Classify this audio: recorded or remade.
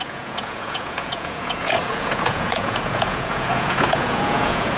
remade